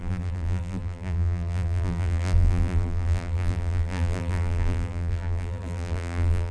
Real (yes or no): no